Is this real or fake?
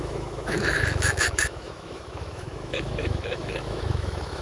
fake